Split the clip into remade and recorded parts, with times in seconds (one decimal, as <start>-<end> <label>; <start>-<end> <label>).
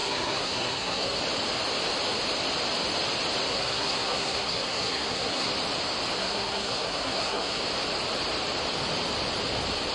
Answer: 0.0-1.2 remade; 1.2-3.5 recorded; 3.5-5.5 remade; 5.5-6.2 recorded; 6.2-7.6 remade; 7.6-9.9 recorded